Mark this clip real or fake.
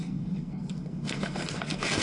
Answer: fake